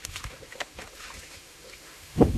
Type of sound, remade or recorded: remade